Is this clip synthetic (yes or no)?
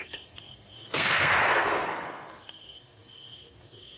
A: yes